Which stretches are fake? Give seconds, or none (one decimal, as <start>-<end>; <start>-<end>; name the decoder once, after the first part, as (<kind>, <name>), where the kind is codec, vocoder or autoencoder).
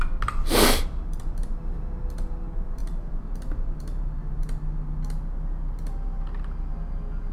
none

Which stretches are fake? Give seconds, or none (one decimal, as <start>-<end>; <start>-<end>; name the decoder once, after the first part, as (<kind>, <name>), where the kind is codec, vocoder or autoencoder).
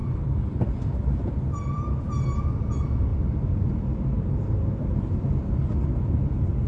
0.0-1.8 (vocoder, BigVGAN v2); 3.1-4.6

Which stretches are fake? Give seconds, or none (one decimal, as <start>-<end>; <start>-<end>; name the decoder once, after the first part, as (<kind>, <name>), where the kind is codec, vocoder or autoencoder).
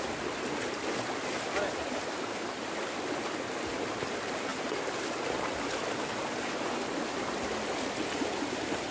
none